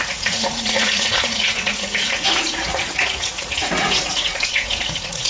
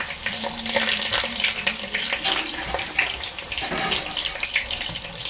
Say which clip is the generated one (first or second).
first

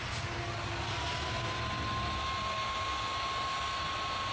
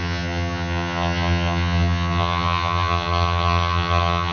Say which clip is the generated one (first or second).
second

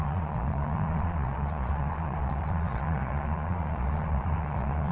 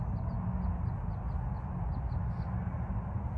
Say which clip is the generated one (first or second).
first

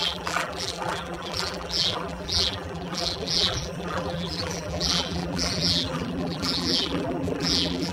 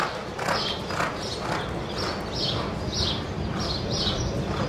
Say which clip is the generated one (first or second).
first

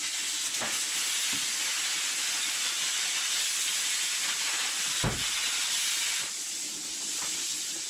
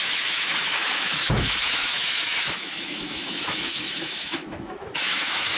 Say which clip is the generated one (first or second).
second